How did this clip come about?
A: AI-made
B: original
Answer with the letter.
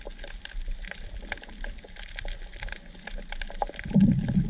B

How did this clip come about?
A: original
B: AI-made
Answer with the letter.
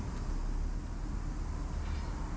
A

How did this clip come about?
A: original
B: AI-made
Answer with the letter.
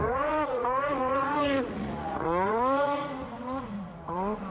B